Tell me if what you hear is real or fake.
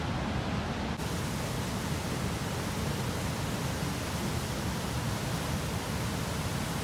real